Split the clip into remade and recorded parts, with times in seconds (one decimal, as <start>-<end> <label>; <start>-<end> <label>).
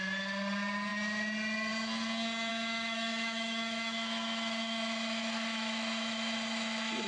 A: 0.0-2.5 recorded; 2.5-7.1 remade